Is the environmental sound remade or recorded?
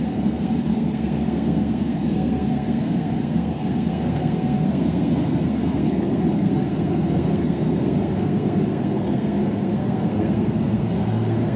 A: remade